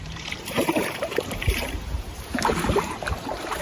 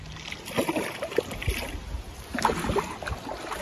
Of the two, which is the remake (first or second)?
first